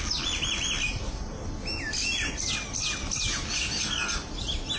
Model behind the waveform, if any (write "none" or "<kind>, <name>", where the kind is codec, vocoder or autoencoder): none